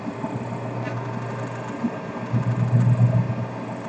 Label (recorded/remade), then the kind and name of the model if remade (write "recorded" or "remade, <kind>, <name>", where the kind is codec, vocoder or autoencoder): recorded